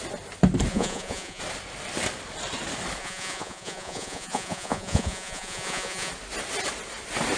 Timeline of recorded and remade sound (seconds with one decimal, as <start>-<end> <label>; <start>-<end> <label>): 0.0-0.7 recorded; 0.7-1.4 remade; 1.4-3.0 recorded; 3.0-6.1 remade; 6.1-7.4 recorded